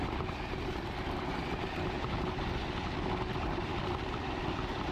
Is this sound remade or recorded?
recorded